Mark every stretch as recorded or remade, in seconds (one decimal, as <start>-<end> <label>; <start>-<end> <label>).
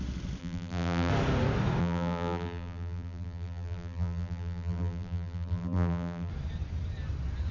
0.0-0.4 recorded; 0.4-1.1 remade; 1.1-1.8 recorded; 1.8-6.3 remade; 6.3-7.5 recorded